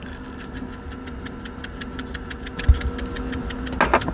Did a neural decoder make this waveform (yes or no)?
no